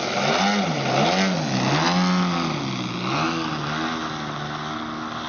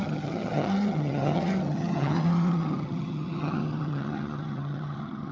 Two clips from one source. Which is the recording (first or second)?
first